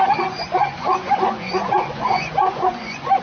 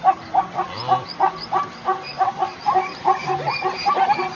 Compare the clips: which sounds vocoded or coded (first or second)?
first